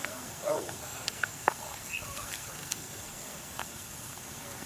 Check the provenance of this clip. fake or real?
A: fake